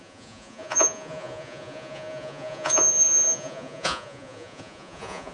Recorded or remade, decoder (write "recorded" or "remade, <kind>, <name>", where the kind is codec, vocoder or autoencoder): remade, vocoder, Vocos